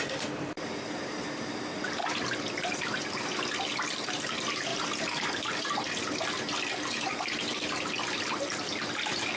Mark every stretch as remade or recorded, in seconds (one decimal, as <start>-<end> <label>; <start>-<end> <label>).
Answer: 0.0-2.0 remade; 2.0-3.1 recorded; 3.1-4.7 remade; 4.7-5.2 recorded; 5.2-9.4 remade